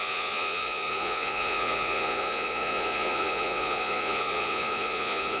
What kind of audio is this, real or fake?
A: fake